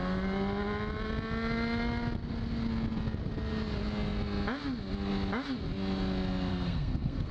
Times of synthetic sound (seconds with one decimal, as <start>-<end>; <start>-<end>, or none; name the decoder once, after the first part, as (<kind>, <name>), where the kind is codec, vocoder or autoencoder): 6.5-7.3 (codec, SNAC)